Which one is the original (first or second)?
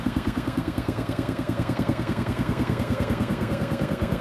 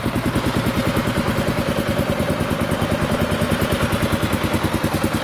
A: second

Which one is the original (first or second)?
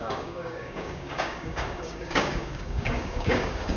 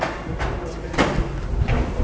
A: second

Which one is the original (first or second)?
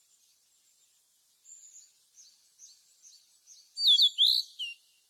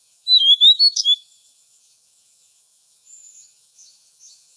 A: first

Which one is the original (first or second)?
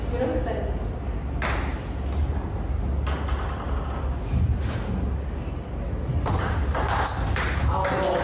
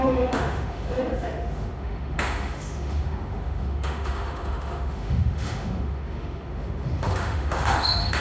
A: first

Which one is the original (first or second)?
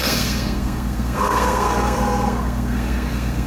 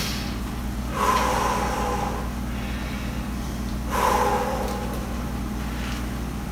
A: second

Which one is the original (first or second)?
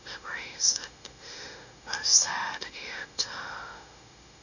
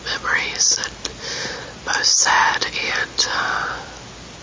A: second